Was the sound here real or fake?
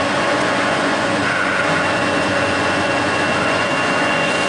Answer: fake